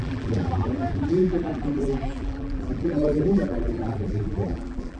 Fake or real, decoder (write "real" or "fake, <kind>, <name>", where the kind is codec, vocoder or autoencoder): fake, vocoder, BigVGAN v2